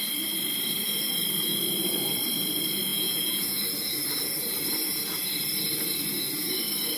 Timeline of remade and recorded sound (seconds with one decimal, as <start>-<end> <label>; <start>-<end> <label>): 0.0-2.9 recorded; 2.9-3.6 remade; 3.6-7.0 recorded